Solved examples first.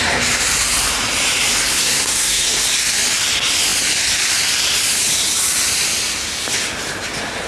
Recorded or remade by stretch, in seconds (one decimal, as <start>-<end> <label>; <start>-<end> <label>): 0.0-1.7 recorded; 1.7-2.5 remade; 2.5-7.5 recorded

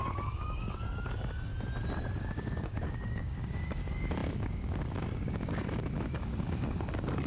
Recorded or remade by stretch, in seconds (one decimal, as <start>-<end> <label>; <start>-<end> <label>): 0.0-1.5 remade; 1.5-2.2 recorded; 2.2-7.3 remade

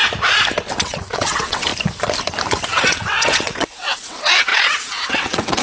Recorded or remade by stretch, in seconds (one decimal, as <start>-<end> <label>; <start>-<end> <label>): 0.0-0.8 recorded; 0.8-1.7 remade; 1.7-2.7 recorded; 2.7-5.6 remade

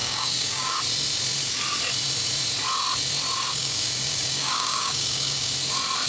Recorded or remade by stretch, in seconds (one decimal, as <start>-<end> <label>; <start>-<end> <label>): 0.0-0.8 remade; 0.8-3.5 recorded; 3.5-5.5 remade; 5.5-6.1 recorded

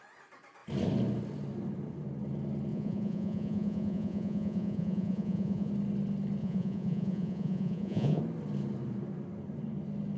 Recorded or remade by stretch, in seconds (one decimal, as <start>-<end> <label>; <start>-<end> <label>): 0.0-2.7 recorded; 2.7-5.7 remade; 5.7-6.4 recorded; 6.4-8.2 remade; 8.2-10.2 recorded

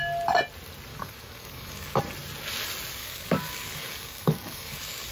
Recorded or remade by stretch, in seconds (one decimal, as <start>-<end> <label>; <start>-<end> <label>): 0.0-0.9 recorded; 0.9-2.0 remade; 2.0-3.0 recorded; 3.0-5.1 remade